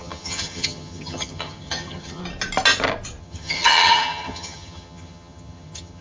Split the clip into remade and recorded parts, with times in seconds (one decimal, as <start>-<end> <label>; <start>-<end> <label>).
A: 0.0-2.2 remade; 2.2-3.2 recorded; 3.2-6.0 remade